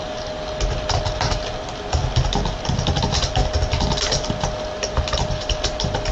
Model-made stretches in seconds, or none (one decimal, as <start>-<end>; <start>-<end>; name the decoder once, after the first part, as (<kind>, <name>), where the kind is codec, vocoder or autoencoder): none